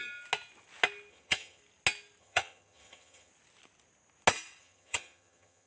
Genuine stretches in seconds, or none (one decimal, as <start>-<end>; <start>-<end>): 0.0-1.1; 1.6-2.2; 3.3-4.6